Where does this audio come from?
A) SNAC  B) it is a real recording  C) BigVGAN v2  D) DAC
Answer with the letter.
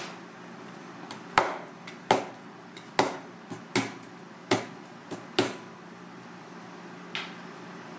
B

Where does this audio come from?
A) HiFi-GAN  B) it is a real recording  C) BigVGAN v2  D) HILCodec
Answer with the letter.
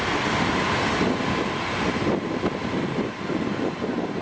B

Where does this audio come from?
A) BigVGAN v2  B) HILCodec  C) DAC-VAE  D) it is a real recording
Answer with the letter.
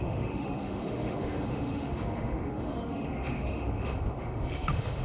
C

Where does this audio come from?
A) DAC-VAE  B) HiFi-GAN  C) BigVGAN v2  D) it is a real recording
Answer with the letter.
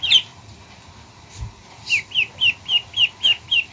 C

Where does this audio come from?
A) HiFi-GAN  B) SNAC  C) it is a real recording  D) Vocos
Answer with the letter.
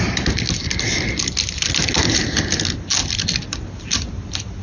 C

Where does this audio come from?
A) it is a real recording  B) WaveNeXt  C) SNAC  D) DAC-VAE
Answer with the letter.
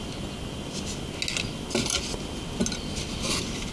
A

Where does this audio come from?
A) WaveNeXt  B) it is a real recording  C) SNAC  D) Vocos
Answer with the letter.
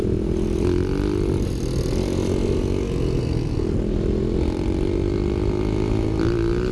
B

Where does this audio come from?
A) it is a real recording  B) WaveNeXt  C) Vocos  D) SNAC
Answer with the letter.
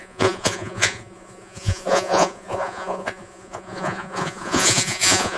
C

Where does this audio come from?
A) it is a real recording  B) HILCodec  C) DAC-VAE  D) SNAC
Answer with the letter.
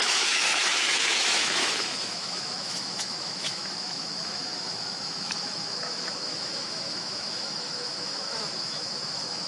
C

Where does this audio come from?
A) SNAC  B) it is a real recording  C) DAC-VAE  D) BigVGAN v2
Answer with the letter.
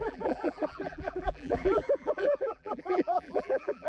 D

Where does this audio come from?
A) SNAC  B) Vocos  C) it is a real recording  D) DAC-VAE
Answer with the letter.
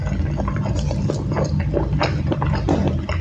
C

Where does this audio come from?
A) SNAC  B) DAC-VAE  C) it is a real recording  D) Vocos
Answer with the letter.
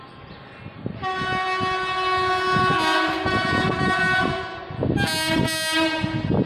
C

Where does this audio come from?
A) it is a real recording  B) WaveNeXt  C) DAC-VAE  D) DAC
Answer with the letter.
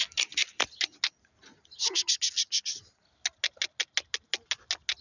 A